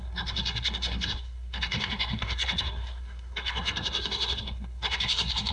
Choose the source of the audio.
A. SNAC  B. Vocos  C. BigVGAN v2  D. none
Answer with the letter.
A